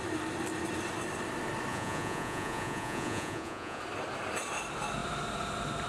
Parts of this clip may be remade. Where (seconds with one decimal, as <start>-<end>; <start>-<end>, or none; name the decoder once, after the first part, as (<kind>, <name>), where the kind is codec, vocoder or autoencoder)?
1.7-3.8 (vocoder, Vocos)